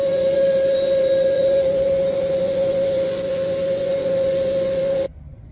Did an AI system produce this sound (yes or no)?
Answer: yes